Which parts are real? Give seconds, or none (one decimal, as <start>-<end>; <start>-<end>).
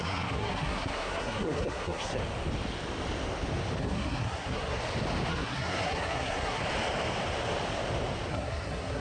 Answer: 2.1-3.8; 4.8-5.3; 6.6-8.3